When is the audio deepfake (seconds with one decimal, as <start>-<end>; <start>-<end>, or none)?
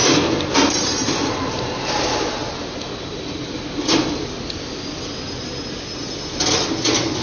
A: none